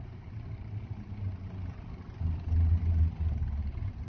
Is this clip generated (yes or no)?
no